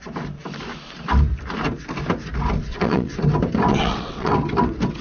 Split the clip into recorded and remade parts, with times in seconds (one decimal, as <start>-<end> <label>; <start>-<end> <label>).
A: 0.0-2.7 recorded; 2.7-3.2 remade; 3.2-3.7 recorded; 3.7-4.3 remade; 4.3-5.0 recorded